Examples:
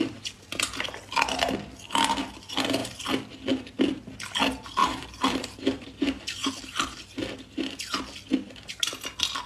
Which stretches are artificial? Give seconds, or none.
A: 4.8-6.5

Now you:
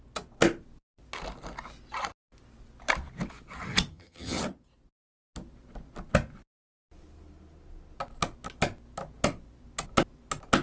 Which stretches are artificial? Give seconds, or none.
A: 3.9-4.4

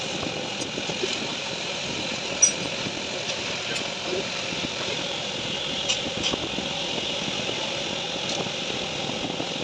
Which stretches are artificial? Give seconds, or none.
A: 1.3-6.0